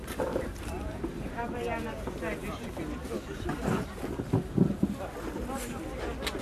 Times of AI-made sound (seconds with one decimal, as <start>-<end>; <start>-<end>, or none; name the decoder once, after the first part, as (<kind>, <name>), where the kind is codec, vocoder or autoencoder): 0.0-1.4 (vocoder, BigVGAN v2)